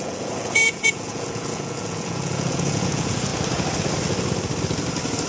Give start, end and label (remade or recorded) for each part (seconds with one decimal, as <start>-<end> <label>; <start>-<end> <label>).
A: 0.0-3.3 remade; 3.3-5.3 recorded